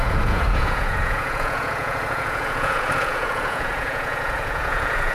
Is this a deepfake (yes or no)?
yes